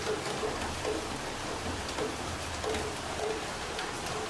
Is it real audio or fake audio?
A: fake